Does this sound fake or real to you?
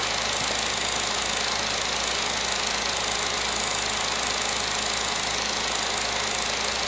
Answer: real